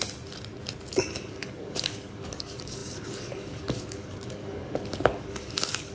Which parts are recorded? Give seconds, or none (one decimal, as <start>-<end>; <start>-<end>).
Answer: 0.0-0.9